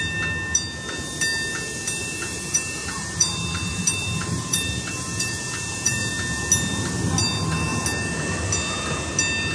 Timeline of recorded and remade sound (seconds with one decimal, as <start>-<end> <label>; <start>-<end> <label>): 0.0-2.0 recorded; 2.0-6.1 remade; 6.1-9.5 recorded